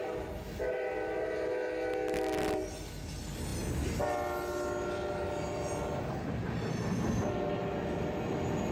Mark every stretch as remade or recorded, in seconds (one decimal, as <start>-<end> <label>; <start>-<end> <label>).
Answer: 0.0-8.7 recorded